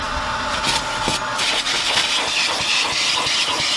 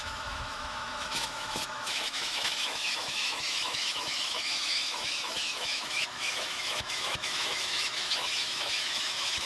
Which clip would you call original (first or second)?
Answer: first